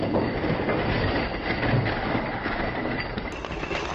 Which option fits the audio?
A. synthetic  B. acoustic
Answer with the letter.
B